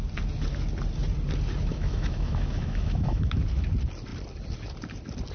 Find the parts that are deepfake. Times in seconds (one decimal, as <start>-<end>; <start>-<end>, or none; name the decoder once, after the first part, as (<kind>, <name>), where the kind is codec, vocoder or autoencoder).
1.7-3.4 (autoencoder, DAC-VAE)